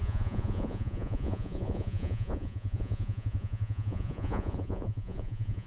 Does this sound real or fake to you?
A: fake